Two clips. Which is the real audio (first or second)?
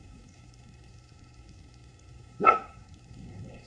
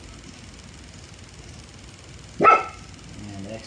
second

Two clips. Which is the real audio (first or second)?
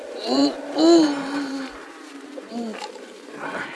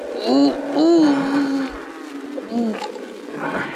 second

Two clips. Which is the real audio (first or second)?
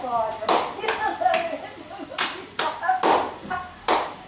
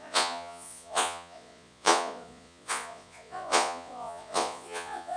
first